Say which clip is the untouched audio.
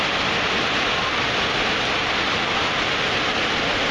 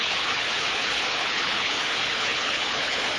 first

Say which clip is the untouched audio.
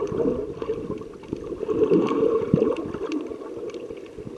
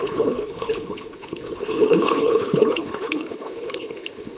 first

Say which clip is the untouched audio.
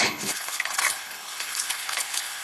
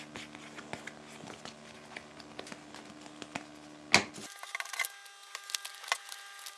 second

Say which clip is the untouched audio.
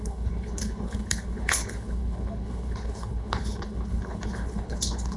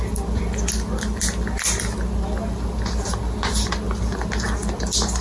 second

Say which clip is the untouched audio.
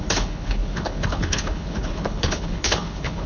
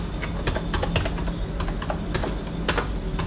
second